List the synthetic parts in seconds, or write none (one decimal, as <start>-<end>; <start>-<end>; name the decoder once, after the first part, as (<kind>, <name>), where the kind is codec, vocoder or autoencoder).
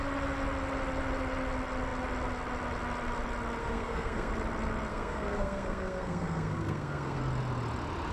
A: 3.6-4.3 (codec, SNAC); 4.9-7.2